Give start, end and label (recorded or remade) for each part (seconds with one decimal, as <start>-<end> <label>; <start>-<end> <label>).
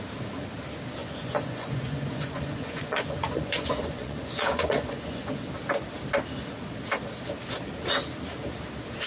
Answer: 0.0-1.0 recorded; 1.0-5.5 remade; 5.5-9.1 recorded